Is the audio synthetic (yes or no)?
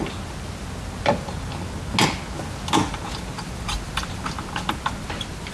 no